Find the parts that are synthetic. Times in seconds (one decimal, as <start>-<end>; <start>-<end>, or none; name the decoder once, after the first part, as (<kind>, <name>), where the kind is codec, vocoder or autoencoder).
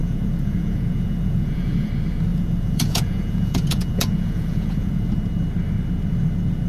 0.0-1.9 (vocoder, Vocos); 2.3-5.1